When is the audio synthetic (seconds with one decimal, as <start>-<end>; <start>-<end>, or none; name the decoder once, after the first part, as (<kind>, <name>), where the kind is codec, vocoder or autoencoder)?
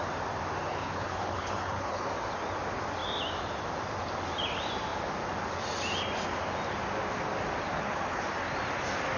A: 0.7-2.1 (codec, HILCodec); 7.7-8.2